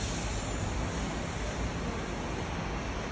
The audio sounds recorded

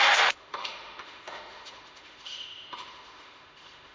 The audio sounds remade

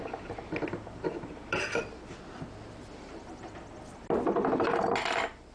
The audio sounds recorded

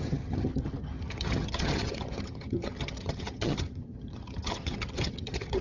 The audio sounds remade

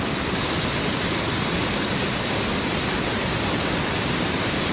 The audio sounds recorded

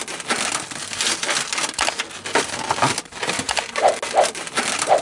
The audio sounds recorded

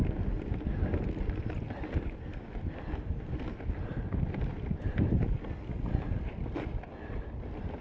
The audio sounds recorded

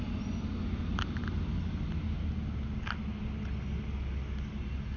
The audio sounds recorded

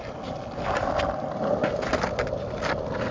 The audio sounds recorded